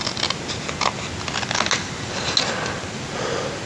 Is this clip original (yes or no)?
yes